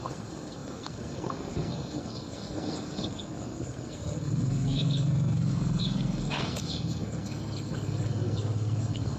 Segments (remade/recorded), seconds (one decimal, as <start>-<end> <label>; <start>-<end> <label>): 0.0-9.2 remade